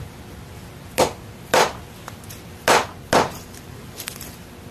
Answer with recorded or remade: recorded